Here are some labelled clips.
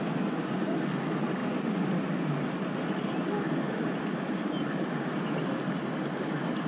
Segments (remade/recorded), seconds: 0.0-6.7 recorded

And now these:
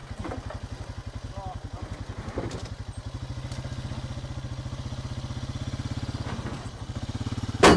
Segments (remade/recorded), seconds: 0.0-7.8 recorded

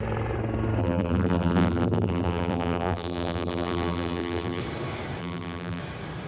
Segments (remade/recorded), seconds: 0.0-0.8 recorded; 0.8-4.6 remade; 4.6-5.2 recorded; 5.2-5.8 remade; 5.8-6.3 recorded